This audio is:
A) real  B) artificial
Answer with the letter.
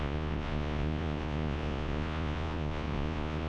B